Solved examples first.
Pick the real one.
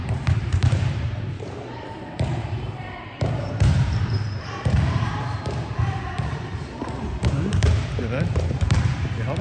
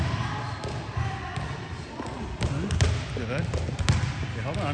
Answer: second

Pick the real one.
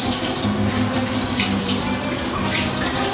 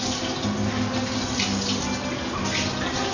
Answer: second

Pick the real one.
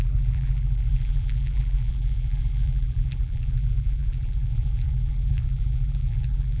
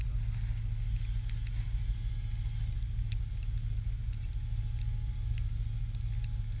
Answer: second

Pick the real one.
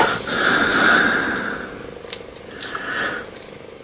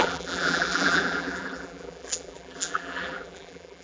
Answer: first